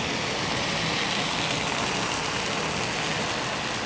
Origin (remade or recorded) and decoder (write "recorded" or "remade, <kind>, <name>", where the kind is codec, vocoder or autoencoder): recorded